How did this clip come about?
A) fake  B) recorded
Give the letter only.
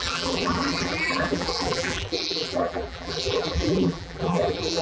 A